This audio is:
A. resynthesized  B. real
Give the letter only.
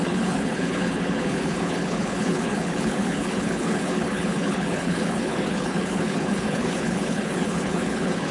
A